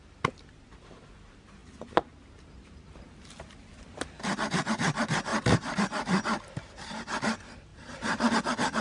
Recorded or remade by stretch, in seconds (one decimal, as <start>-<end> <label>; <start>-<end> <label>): 0.0-5.3 recorded; 5.3-5.8 remade; 5.8-7.7 recorded; 7.7-8.3 remade; 8.3-8.8 recorded